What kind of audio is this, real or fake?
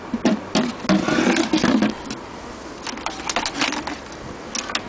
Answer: real